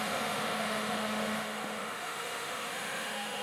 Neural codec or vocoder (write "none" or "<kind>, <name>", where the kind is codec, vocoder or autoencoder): autoencoder, DAC-VAE